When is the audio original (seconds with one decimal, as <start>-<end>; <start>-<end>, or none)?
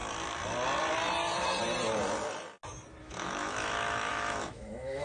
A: 0.0-3.0